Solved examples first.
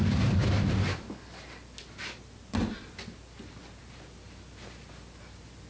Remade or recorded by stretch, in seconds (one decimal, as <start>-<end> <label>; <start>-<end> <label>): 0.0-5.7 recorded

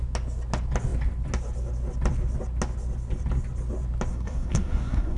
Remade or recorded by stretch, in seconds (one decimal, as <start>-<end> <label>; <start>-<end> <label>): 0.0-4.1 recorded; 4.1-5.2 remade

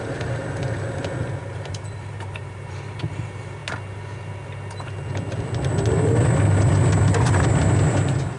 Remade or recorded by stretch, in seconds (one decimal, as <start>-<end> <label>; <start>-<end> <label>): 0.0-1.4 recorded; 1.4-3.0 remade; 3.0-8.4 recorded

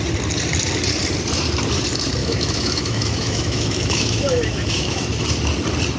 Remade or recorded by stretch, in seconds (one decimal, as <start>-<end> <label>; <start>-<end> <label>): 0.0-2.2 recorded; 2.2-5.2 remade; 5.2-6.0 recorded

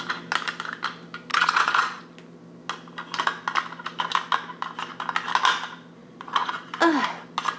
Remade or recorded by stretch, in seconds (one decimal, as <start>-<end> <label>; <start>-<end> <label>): 0.0-1.3 recorded; 1.3-2.0 remade; 2.0-6.0 recorded; 6.0-6.7 remade; 6.7-7.6 recorded